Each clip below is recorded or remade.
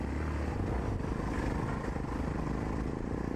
recorded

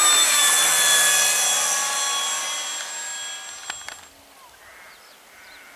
recorded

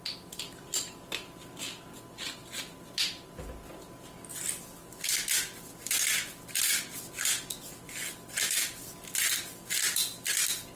recorded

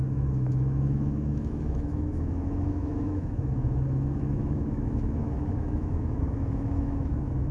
remade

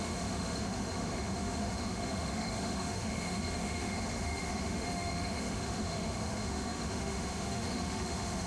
remade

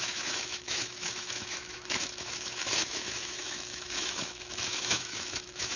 remade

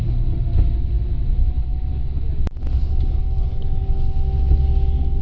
recorded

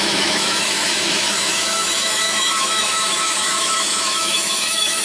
remade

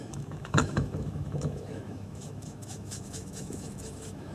remade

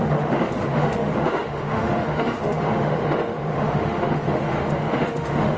remade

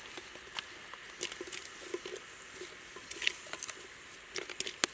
recorded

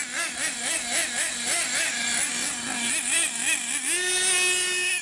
recorded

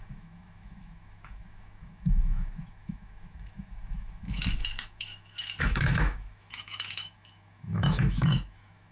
remade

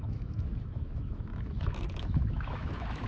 remade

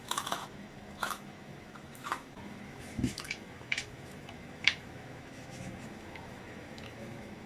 remade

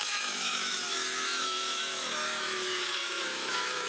remade